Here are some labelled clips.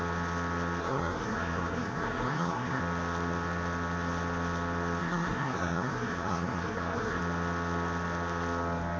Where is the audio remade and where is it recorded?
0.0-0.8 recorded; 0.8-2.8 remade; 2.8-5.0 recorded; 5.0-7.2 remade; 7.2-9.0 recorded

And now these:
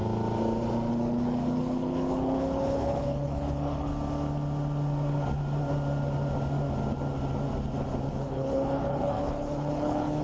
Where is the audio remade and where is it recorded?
0.0-0.9 recorded; 0.9-3.9 remade; 3.9-8.1 recorded; 8.1-10.2 remade

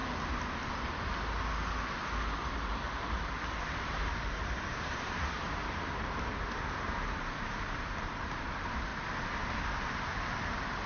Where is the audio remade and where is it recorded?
0.0-3.8 recorded; 3.8-8.9 remade; 8.9-10.9 recorded

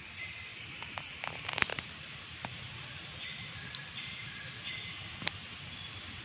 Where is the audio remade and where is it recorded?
0.0-0.5 recorded; 0.5-1.0 remade; 1.0-1.7 recorded; 1.7-4.6 remade; 4.6-6.2 recorded

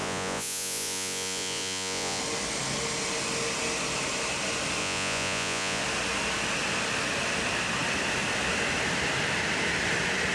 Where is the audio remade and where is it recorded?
0.0-2.2 remade; 2.2-4.8 recorded; 4.8-5.8 remade; 5.8-10.3 recorded